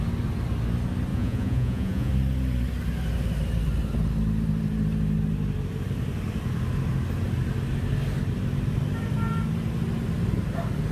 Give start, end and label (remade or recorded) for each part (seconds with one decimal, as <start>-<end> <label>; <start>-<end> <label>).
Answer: 0.0-1.1 recorded; 1.1-2.1 remade; 2.1-10.9 recorded